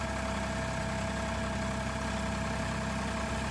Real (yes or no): yes